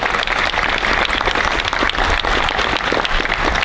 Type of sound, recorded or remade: recorded